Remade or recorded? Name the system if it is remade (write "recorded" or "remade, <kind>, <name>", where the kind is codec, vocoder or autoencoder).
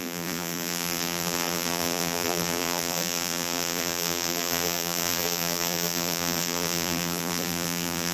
remade, vocoder, BigVGAN v2